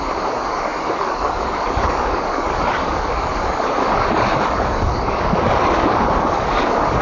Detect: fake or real fake